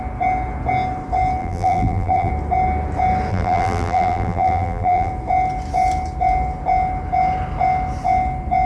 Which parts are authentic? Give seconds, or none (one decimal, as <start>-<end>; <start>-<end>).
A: 0.0-1.4; 2.3-3.3; 5.1-8.7